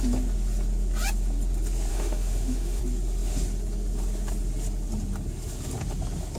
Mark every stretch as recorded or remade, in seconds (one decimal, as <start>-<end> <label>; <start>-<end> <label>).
0.0-1.9 recorded; 1.9-2.8 remade; 2.8-6.4 recorded